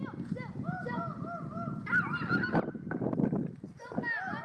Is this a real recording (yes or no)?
yes